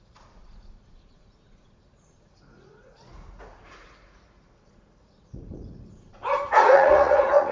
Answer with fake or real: fake